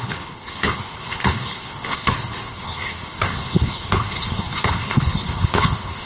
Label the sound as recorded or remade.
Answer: remade